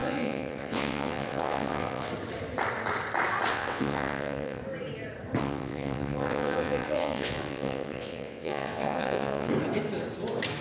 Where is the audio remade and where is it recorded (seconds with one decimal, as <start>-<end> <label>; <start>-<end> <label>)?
0.0-2.1 remade; 2.1-3.5 recorded; 3.5-4.6 remade; 4.6-5.4 recorded; 5.4-9.5 remade; 9.5-10.6 recorded